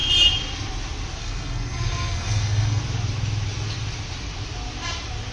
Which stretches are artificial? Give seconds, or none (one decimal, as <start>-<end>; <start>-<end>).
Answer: 1.2-2.8